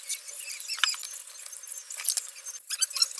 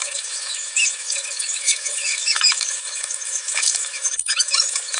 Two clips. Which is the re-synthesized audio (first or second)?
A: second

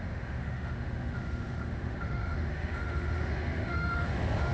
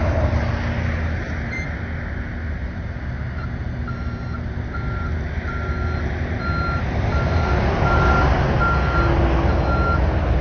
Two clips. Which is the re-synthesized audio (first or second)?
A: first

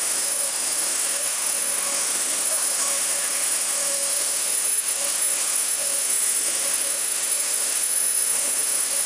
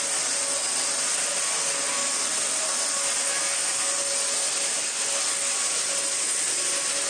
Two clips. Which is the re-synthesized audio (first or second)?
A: first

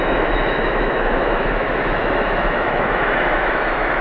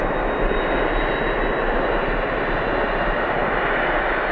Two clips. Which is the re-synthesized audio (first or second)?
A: first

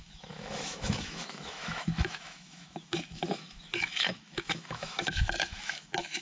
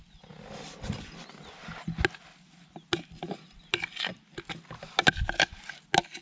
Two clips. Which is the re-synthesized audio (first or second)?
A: first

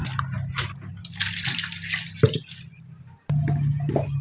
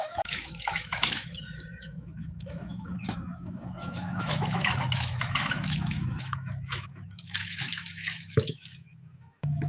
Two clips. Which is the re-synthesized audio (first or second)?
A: second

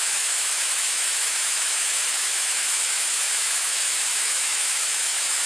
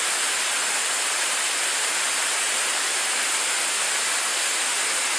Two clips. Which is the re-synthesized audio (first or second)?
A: first